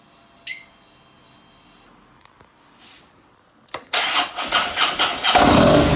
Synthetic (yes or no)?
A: no